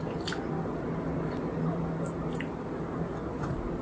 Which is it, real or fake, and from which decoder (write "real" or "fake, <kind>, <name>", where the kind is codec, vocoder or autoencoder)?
real